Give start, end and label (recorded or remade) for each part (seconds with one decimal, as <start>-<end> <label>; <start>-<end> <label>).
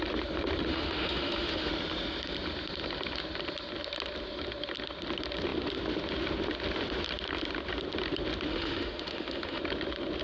0.0-0.7 recorded; 0.7-1.7 remade; 1.7-8.5 recorded; 8.5-9.6 remade; 9.6-10.2 recorded